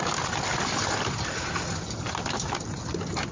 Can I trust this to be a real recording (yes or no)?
yes